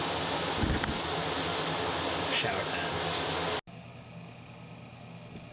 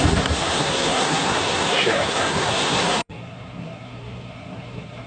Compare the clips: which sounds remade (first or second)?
second